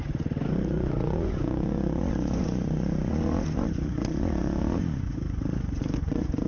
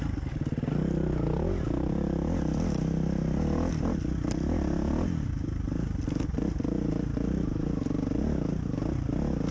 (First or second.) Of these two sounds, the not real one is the first